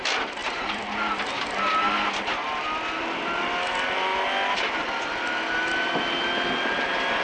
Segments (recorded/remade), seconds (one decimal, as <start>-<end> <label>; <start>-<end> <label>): 0.0-7.2 recorded